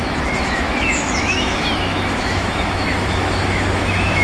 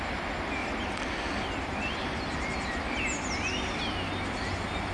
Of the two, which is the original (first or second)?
second